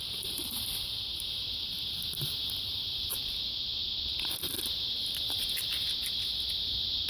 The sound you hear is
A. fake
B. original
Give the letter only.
B